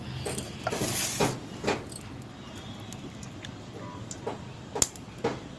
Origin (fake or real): real